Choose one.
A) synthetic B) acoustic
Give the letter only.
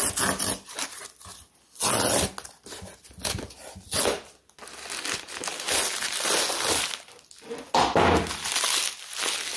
B